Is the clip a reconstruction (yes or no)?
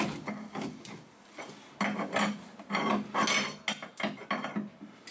no